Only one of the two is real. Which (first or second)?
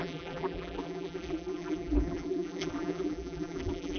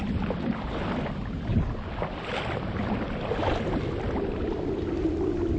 second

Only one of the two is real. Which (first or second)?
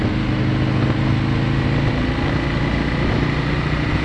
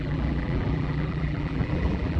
first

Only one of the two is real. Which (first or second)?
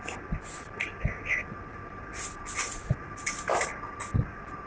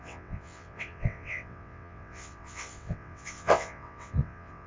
first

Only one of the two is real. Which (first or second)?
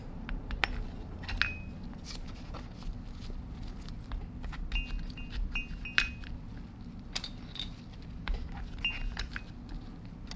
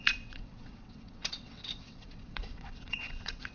first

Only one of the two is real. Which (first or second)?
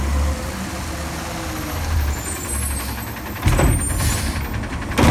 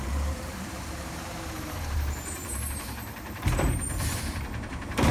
first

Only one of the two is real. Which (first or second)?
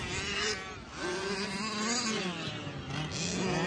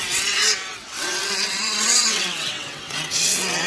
first